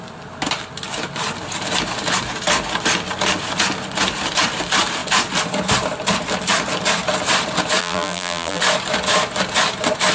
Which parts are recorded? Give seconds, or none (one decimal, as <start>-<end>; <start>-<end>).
0.0-7.8; 8.6-10.1